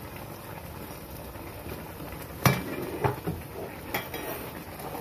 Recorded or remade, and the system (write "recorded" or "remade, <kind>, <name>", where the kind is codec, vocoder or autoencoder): recorded